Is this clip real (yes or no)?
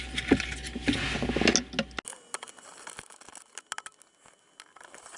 yes